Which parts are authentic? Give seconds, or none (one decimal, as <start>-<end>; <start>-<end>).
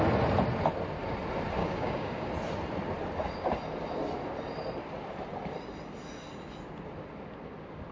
0.0-1.6; 2.3-7.9